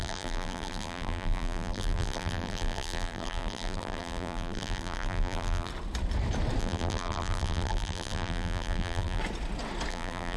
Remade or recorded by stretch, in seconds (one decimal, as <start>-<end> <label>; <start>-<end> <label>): 0.0-5.7 remade; 5.7-6.6 recorded; 6.6-9.2 remade; 9.2-9.9 recorded; 9.9-10.4 remade